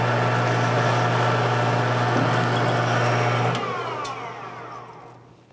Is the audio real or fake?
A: real